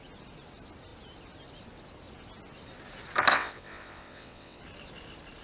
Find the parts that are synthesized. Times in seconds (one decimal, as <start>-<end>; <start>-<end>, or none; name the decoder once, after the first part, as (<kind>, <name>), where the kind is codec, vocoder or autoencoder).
3.3-4.6 (vocoder, WaveNeXt)